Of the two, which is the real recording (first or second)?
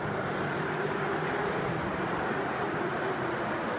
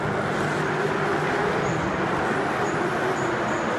second